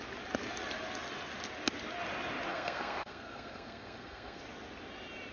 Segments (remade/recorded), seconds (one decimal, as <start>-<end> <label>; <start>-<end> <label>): 0.0-2.5 recorded; 2.5-4.4 remade; 4.4-5.3 recorded